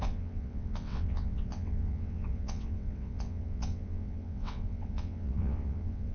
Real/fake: fake